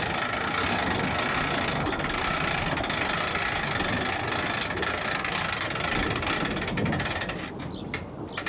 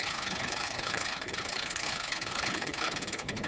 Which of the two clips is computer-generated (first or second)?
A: second